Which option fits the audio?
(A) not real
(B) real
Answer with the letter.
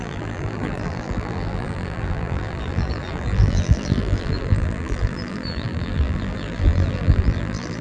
A